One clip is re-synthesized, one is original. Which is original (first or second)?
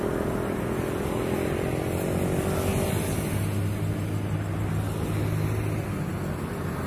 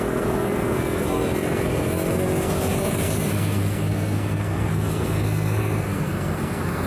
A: first